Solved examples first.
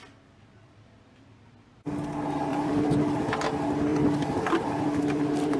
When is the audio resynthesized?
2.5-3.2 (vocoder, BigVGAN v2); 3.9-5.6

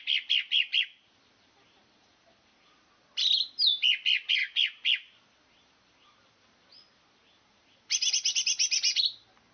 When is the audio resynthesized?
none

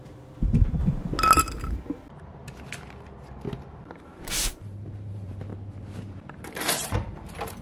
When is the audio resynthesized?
0.0-0.8 (vocoder, BigVGAN v2); 1.3-2.4; 3.7-5.5; 6.1-7.6